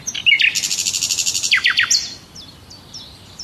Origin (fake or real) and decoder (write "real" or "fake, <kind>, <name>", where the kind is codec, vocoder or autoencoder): real